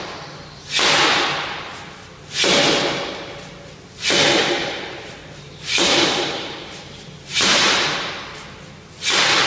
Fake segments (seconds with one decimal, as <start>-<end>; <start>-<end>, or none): 4.6-8.1